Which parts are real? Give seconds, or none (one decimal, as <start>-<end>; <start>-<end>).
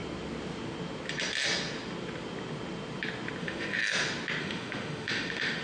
0.0-3.4; 3.8-4.4